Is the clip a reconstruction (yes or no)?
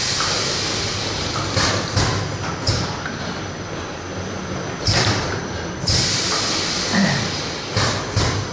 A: no